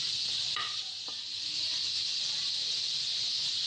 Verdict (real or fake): real